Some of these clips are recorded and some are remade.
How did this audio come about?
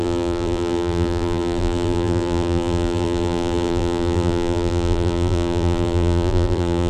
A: remade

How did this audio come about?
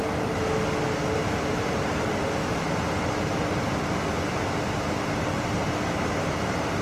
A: recorded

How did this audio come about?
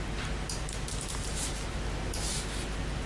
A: recorded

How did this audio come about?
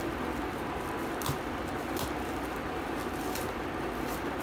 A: recorded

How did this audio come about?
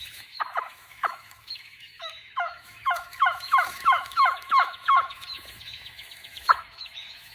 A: remade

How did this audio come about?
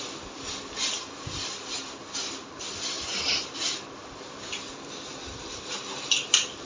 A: recorded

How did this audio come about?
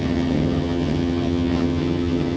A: remade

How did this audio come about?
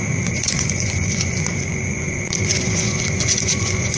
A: remade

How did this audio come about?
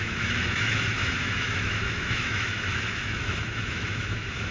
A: remade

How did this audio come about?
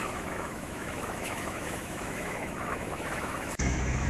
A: remade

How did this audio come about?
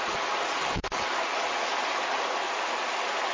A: recorded